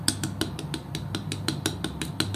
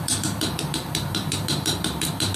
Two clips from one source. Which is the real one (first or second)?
first